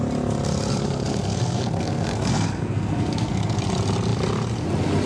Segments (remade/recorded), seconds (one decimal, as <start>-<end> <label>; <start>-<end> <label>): 0.0-0.7 recorded; 0.7-3.6 remade; 3.6-5.1 recorded